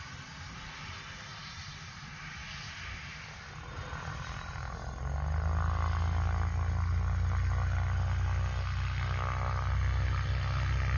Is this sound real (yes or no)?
yes